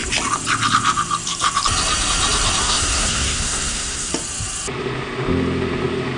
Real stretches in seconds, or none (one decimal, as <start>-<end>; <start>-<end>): 0.0-2.6; 4.1-6.2